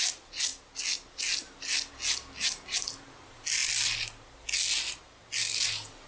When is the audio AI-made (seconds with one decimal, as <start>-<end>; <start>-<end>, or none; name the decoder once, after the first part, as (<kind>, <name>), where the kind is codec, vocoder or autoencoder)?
none